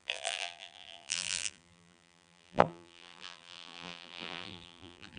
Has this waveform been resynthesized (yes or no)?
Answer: yes